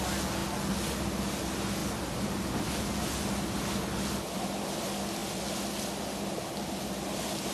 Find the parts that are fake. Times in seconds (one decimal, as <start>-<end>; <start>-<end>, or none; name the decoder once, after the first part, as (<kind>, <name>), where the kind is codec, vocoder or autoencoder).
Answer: none